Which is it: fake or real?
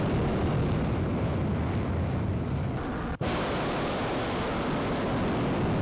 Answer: real